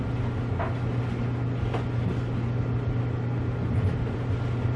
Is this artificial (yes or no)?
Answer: no